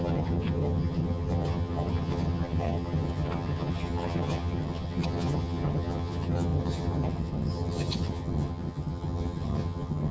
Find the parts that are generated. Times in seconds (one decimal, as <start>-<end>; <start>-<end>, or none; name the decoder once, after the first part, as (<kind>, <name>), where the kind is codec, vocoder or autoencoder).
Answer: 0.0-10.1 (vocoder, HiFi-GAN)